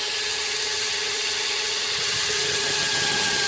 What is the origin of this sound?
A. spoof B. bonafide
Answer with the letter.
A